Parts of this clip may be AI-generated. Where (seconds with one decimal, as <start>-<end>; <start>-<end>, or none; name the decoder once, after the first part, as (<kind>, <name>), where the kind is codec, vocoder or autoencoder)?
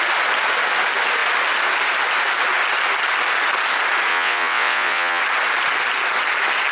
4.1-5.2 (vocoder, WaveNeXt)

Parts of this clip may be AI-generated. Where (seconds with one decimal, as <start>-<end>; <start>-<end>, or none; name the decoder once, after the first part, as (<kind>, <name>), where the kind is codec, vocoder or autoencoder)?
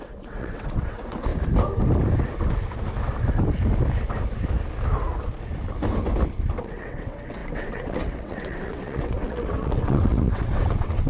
0.0-1.3 (vocoder, WaveNeXt); 6.6-11.1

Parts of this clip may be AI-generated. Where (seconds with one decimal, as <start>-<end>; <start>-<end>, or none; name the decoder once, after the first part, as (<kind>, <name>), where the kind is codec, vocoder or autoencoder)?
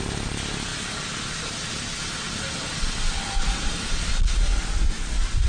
none